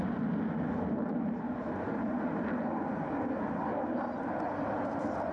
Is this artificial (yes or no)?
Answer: no